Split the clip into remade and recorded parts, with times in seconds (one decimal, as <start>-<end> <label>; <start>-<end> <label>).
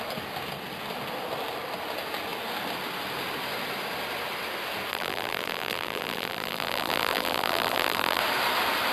0.0-4.9 recorded; 4.9-8.2 remade; 8.2-8.9 recorded